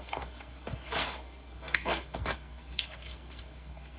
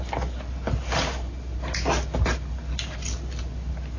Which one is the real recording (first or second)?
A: second